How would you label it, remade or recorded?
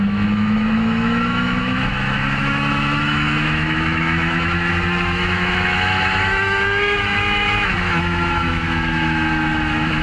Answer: remade